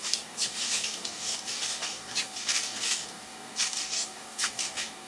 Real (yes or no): no